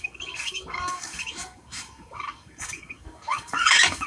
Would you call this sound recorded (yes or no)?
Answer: no